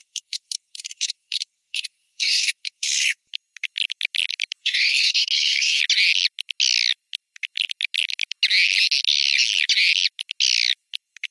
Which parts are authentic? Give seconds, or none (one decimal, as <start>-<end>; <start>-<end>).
3.3-4.6; 5.8-11.3